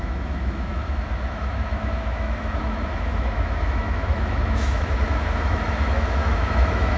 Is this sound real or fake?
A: fake